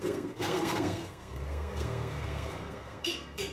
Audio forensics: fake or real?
fake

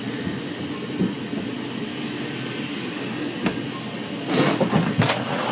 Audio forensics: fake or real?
real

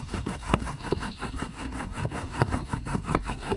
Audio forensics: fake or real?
fake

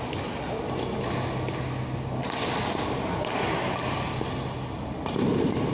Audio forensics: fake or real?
real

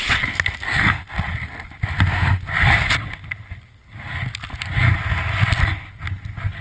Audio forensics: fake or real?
real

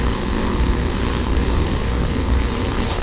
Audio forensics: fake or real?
fake